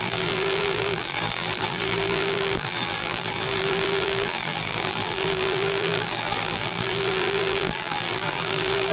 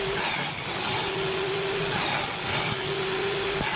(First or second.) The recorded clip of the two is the second